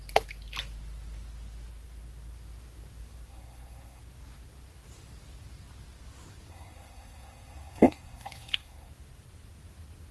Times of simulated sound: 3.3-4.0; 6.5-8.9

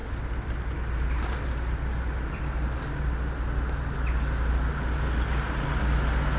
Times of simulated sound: none

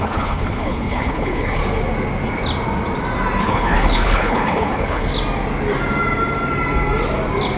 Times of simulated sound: 0.0-1.6; 3.4-5.1

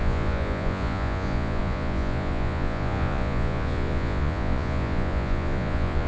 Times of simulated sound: 0.0-6.1

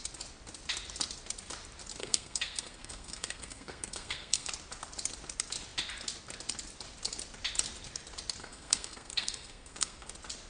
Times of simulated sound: 2.0-4.5; 8.4-10.1

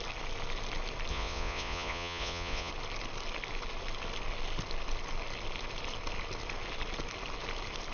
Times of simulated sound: 1.1-2.7